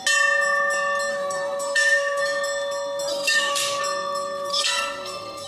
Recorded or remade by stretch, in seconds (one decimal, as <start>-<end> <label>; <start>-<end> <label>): 0.0-1.1 recorded; 1.1-2.2 remade; 2.2-3.1 recorded; 3.1-3.8 remade; 3.8-4.5 recorded; 4.5-5.5 remade